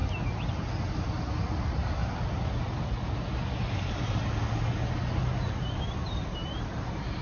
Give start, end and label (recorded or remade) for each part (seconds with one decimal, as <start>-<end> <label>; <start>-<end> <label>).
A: 0.0-7.2 recorded